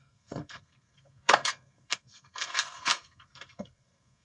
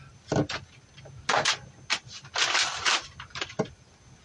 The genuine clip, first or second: second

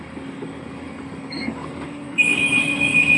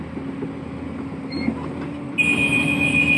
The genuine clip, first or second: second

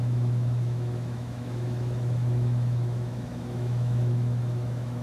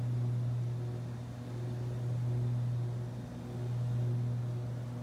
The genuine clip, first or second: second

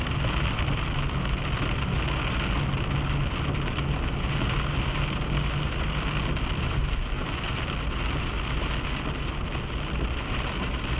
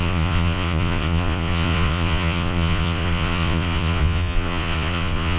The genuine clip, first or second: first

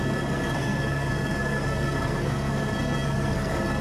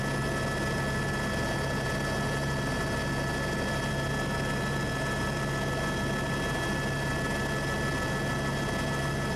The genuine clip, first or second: second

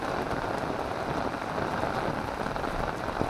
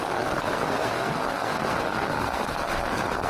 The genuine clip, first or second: first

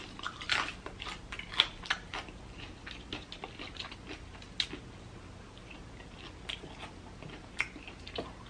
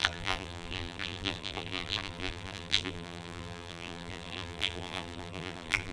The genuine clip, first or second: first